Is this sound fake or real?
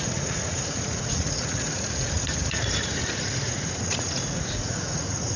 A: fake